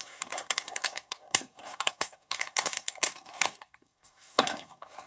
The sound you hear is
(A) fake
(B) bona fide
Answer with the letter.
A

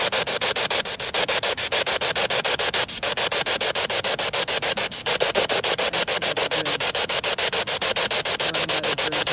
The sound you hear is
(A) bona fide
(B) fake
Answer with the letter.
A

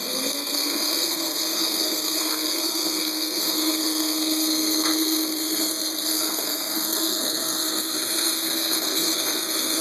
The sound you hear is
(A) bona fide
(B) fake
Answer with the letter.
B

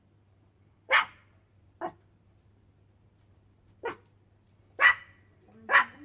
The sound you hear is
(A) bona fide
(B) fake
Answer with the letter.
A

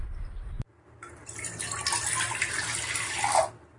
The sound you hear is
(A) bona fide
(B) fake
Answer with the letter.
A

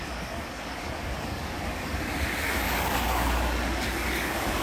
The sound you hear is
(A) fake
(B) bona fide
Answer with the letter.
A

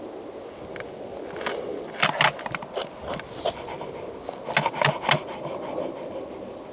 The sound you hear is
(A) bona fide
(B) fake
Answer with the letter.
A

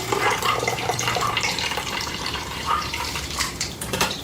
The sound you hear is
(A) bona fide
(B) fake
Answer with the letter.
B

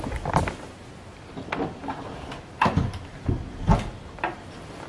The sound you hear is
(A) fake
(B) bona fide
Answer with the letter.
B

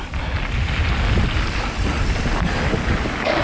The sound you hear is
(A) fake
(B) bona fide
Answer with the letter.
B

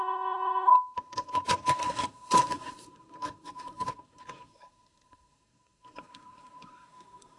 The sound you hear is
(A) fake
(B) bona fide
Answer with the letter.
A